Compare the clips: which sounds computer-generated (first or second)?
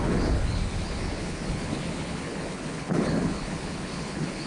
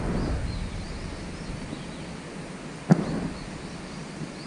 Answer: first